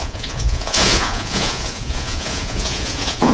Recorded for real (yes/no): no